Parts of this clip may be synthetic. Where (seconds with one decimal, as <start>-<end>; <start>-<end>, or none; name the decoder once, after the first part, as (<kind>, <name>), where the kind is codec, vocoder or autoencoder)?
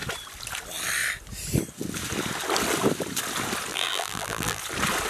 3.7-4.6 (vocoder, BigVGAN v2)